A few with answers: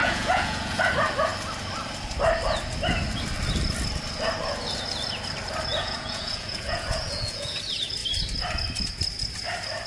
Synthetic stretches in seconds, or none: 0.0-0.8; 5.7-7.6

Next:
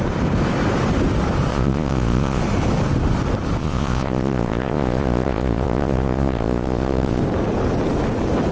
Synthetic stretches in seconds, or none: 1.5-2.4; 3.6-7.2

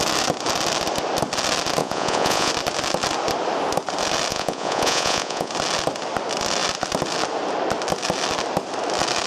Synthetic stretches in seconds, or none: 1.8-2.5; 4.3-5.5

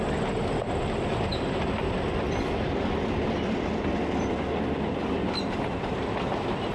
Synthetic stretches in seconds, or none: none

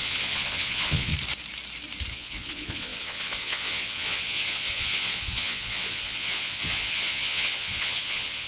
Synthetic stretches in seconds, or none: 0.0-1.1; 2.1-8.5

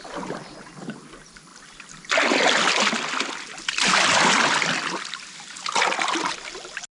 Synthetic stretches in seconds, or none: none

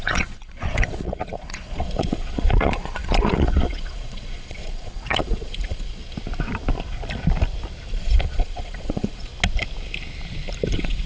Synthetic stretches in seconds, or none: 0.0-6.0; 7.9-9.3; 10.7-11.1

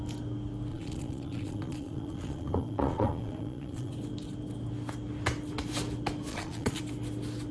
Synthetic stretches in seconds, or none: 0.7-3.9; 6.3-6.8